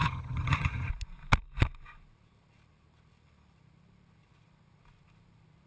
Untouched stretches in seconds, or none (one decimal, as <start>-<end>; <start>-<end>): 0.9-5.7